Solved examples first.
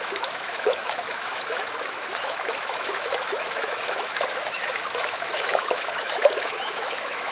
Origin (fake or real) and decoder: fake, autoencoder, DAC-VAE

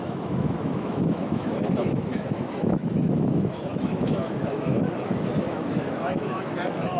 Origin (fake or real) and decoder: fake, autoencoder, DAC-VAE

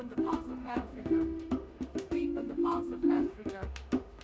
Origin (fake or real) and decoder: fake, autoencoder, DAC-VAE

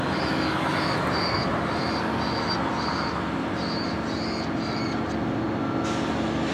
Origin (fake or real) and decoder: real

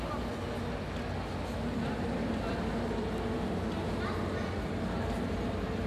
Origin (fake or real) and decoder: real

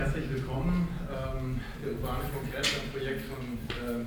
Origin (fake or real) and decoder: real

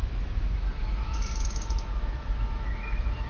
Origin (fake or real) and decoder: fake, autoencoder, DAC-VAE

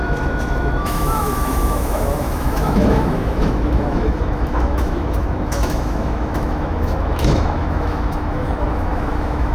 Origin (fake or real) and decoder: fake, autoencoder, DAC-VAE